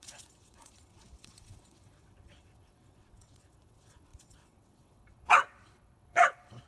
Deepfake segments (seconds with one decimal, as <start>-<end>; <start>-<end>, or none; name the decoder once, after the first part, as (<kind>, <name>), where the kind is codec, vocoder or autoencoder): 0.0-6.7 (vocoder, WaveNeXt)